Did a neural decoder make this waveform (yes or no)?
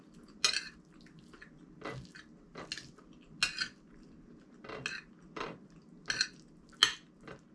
no